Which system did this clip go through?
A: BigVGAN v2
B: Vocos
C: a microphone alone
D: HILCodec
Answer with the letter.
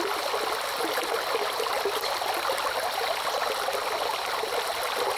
C